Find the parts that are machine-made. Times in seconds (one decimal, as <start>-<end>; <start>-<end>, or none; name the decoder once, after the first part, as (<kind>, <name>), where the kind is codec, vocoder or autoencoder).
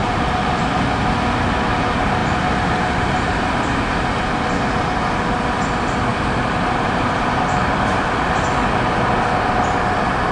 0.0-0.6 (vocoder, BigVGAN v2); 2.2-3.9; 6.1-8.0